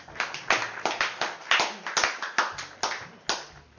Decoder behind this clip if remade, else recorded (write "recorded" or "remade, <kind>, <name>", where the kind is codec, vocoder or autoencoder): recorded